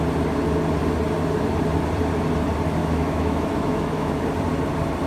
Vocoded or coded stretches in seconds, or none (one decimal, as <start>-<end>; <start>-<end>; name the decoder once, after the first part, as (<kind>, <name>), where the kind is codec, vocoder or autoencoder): 2.8-4.2 (autoencoder, DAC-VAE)